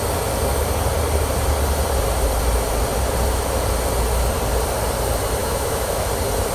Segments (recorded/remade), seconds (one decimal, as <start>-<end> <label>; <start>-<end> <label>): 0.0-5.4 recorded; 5.4-6.0 remade; 6.0-6.5 recorded